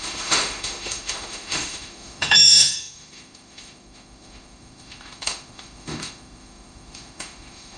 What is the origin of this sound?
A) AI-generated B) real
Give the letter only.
A